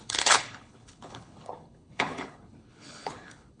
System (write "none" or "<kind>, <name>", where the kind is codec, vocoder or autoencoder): codec, HILCodec